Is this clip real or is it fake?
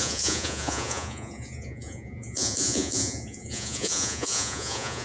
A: fake